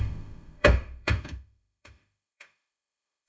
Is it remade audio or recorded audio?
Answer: remade